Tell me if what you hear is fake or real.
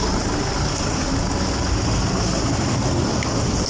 real